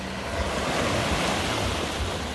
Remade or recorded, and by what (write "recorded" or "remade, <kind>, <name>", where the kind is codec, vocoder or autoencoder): recorded